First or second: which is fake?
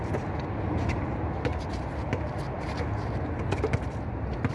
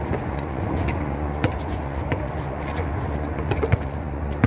second